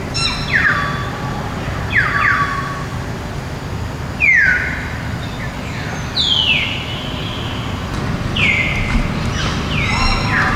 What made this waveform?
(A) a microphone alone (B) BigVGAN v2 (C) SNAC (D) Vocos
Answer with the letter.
A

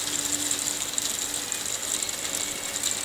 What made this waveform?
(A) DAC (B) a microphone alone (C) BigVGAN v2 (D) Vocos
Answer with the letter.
B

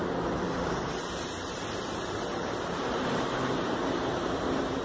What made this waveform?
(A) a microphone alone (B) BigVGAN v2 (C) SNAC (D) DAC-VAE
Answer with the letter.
B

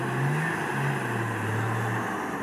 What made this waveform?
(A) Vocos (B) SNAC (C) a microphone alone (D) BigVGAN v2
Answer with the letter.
C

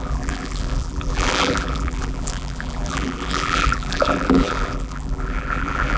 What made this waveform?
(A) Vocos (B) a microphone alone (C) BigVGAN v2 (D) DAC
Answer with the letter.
C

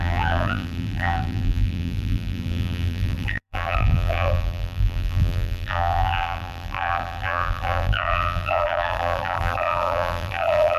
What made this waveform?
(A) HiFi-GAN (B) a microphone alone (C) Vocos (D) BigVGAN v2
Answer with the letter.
D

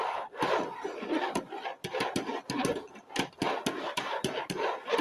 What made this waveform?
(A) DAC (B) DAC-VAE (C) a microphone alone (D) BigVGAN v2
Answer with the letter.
C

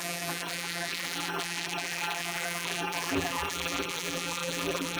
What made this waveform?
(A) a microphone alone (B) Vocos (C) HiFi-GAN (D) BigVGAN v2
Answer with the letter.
D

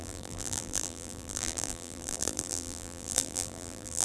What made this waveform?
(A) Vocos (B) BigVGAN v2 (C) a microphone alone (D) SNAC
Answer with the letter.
B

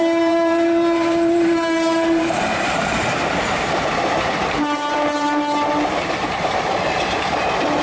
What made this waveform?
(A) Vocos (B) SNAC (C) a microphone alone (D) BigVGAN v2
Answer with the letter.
D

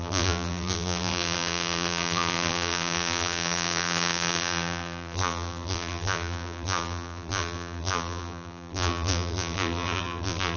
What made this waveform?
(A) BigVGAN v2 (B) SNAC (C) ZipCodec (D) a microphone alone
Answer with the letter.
A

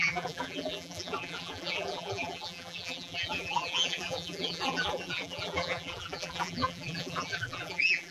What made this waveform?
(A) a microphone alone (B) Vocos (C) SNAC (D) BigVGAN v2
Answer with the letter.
D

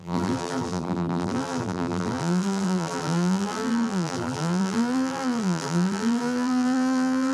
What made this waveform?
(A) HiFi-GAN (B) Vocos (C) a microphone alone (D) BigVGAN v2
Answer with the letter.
D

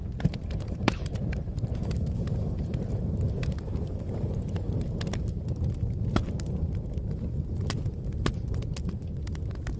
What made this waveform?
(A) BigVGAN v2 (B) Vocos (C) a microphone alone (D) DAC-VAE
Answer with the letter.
A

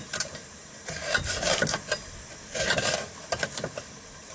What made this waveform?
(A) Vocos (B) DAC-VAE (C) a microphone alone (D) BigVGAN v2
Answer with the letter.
D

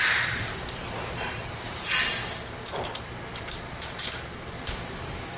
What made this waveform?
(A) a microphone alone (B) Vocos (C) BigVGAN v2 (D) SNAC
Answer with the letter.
C